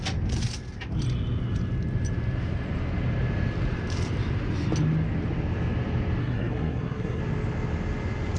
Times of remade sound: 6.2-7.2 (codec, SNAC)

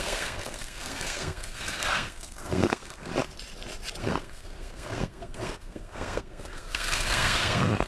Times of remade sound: 0.0-3.1 (codec, SNAC); 4.0-7.9

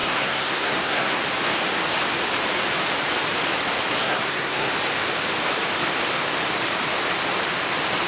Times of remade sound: 0.0-1.2 (codec, SNAC); 4.0-4.7